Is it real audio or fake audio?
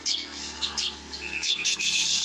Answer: fake